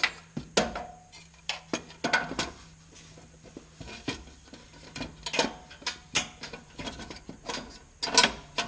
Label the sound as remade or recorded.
recorded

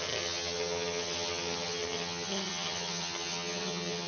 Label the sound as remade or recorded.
remade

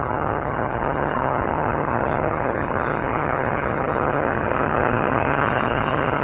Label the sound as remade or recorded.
remade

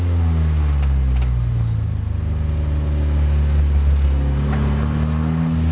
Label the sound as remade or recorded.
recorded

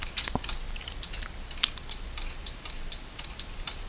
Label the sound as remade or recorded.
recorded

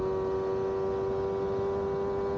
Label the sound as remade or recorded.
recorded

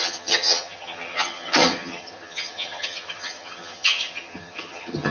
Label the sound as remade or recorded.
remade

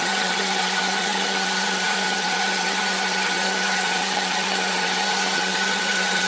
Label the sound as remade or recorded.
remade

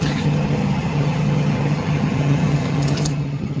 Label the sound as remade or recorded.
remade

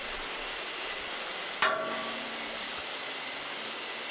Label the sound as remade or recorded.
recorded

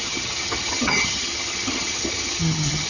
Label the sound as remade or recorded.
remade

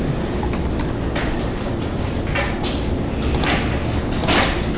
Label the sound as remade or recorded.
recorded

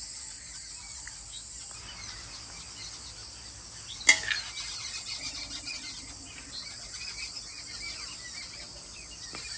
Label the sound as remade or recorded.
recorded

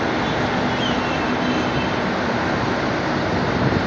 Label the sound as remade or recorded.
recorded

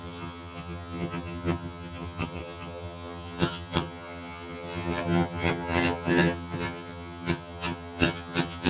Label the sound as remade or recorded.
remade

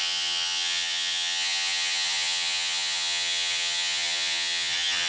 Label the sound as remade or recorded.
remade